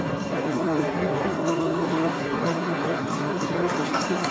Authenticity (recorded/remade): remade